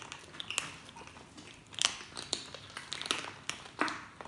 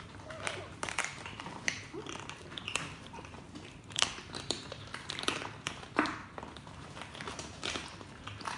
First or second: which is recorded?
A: first